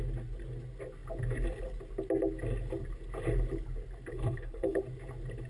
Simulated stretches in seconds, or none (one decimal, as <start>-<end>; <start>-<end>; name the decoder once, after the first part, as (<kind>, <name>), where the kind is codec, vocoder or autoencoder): 4.1-4.8 (codec, HILCodec)